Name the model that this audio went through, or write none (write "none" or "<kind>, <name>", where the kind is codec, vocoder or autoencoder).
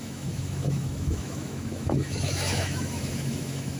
autoencoder, DAC-VAE